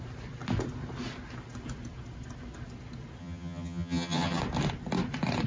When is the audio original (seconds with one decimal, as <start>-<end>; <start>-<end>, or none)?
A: 0.0-3.2; 4.4-5.5